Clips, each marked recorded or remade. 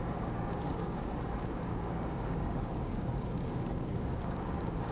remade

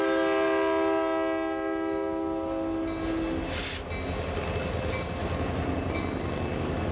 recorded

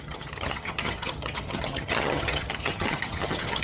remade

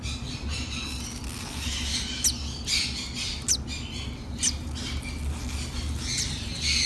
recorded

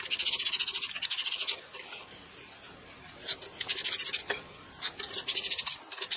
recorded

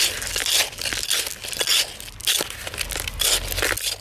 recorded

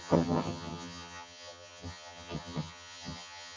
remade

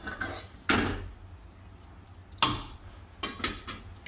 recorded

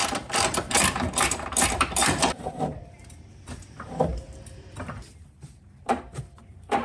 remade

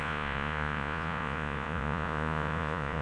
remade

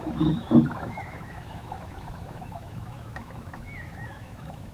remade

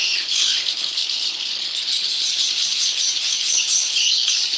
remade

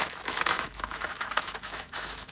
remade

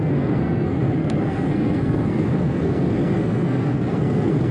remade